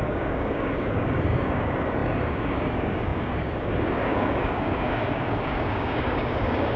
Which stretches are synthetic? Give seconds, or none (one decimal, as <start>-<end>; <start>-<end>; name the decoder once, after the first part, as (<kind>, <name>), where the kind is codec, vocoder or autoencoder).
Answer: 0.0-6.8 (codec, DAC)